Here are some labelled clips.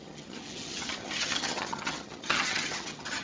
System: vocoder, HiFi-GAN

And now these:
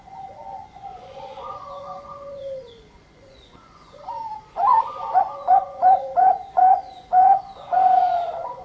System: vocoder, Vocos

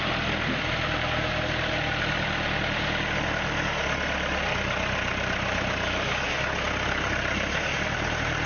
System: none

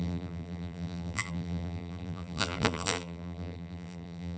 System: vocoder, BigVGAN v2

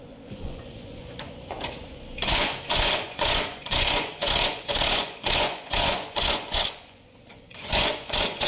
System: vocoder, Vocos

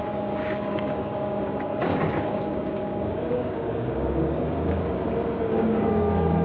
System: codec, DAC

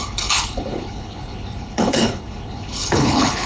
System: codec, HILCodec